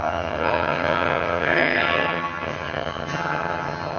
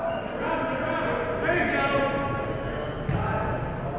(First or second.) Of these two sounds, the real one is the second